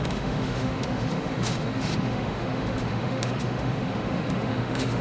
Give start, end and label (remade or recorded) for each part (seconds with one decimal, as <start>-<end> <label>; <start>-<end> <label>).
0.0-5.0 remade